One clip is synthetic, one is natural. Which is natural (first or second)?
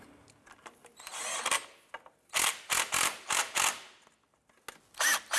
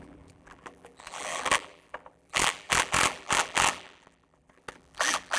first